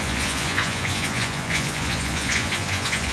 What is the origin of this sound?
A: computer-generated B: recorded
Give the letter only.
A